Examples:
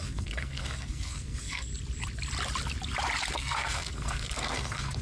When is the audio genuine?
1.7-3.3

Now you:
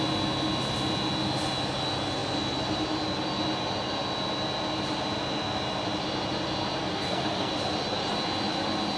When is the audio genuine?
0.0-6.8; 7.5-9.0

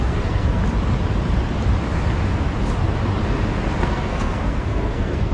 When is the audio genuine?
0.6-3.8

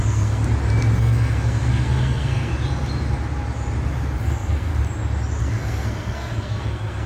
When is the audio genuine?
0.4-1.0; 2.5-4.2; 4.7-5.4

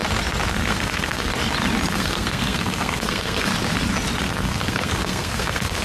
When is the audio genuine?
0.0-0.5; 1.3-1.9; 3.5-4.2

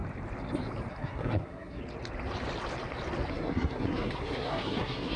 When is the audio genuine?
0.0-0.9; 1.8-3.3

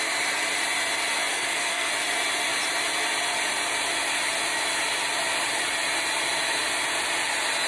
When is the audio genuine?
0.0-1.3; 1.9-7.7